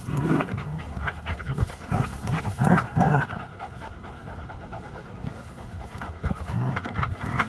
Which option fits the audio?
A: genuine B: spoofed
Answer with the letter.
B